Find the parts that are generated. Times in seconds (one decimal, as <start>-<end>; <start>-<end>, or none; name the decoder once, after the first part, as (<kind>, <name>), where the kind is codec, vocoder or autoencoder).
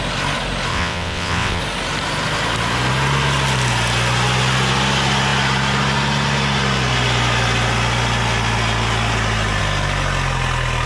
0.7-1.6 (vocoder, WaveNeXt)